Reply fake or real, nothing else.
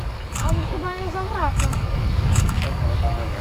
fake